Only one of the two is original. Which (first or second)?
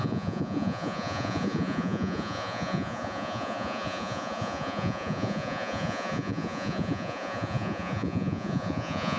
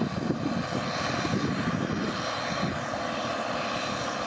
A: second